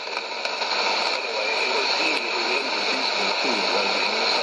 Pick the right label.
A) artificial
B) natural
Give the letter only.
B